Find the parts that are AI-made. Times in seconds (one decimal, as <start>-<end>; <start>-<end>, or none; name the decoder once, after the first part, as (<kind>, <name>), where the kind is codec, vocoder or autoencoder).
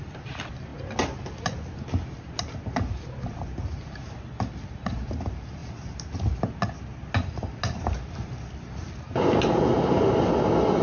none